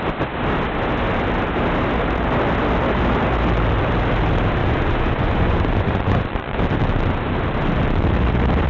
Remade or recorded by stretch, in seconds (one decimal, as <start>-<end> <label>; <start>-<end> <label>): 0.0-4.6 recorded; 4.6-6.6 remade; 6.6-8.7 recorded